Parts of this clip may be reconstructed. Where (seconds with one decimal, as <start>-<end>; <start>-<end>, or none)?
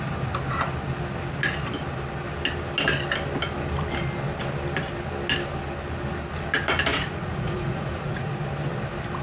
6.9-8.3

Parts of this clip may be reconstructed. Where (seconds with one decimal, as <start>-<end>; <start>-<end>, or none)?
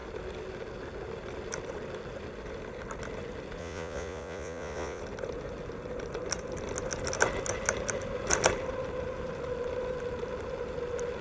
3.6-5.0